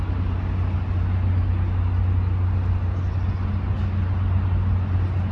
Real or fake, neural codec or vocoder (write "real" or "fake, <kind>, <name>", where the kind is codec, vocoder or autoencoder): real